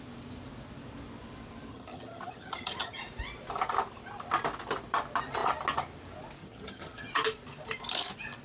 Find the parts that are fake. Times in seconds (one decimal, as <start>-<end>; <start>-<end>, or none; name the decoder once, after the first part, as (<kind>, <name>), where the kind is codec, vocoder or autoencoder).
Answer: 1.7-3.0 (vocoder, HiFi-GAN); 6.4-7.1